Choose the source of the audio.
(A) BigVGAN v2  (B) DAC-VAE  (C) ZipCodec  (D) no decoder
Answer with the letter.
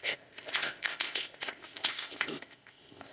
C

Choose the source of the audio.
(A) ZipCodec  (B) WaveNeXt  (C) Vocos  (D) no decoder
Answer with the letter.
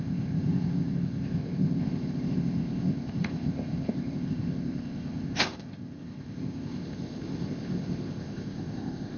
A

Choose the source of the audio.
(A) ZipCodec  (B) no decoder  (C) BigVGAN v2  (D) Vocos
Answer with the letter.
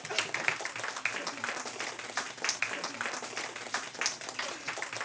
B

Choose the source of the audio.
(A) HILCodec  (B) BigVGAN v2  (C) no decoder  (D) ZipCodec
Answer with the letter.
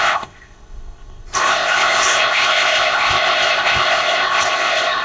D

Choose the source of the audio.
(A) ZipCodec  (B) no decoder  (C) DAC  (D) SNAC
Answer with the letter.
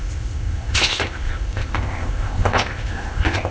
A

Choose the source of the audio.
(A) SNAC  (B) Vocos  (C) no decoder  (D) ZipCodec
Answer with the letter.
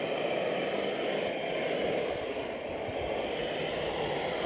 C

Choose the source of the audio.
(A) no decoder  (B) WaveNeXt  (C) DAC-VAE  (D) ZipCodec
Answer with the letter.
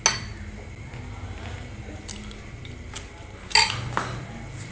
A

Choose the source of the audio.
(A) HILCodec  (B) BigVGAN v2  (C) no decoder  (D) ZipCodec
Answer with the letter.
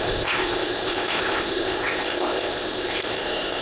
D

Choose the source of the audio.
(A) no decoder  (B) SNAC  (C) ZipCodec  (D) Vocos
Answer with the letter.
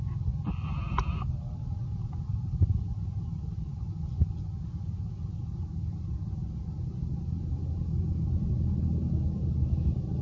A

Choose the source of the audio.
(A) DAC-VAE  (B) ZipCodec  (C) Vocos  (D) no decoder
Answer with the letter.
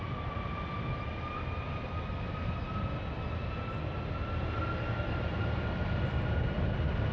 D